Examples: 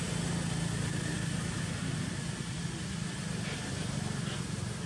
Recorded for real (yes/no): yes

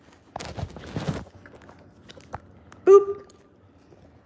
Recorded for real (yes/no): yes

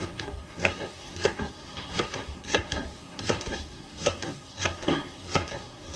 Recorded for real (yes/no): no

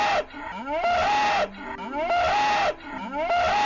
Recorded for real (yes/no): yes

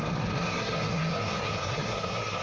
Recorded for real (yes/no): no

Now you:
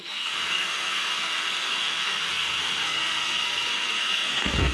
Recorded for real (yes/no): no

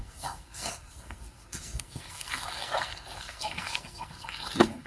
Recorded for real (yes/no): no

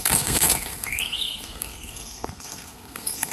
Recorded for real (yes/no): no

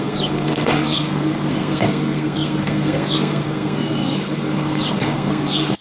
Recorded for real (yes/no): no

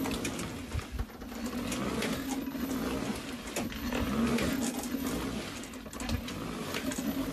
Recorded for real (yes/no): yes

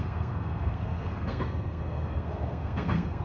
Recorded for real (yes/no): no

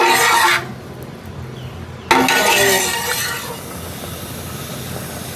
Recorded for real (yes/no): yes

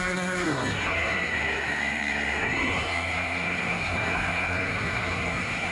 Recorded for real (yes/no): no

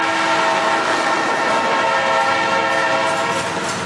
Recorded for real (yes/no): yes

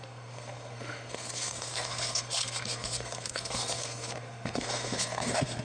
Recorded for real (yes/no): no